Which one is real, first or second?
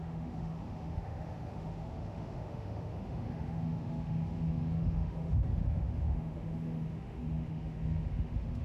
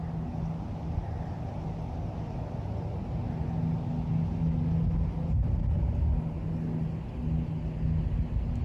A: second